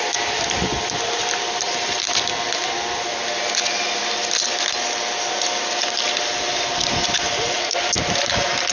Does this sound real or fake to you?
real